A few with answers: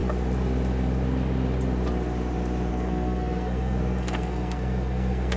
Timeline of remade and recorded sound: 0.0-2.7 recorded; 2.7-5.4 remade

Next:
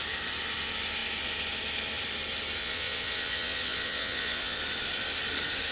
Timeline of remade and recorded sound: 0.0-2.6 recorded; 2.6-4.6 remade; 4.6-5.7 recorded

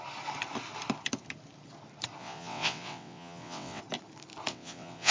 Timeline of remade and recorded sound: 0.0-2.2 recorded; 2.2-3.8 remade; 3.8-4.5 recorded; 4.5-5.1 remade

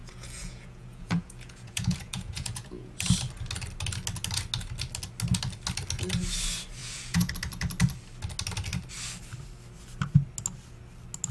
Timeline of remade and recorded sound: 0.0-2.9 remade; 2.9-6.8 recorded; 6.8-7.3 remade; 7.3-11.3 recorded

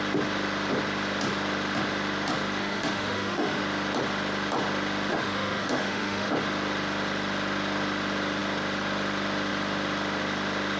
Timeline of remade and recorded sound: 0.0-2.6 recorded; 2.6-3.6 remade; 3.6-5.1 recorded; 5.1-6.3 remade; 6.3-10.8 recorded